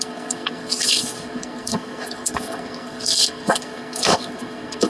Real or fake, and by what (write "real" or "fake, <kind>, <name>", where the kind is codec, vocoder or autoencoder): fake, codec, SNAC